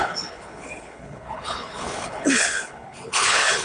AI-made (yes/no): yes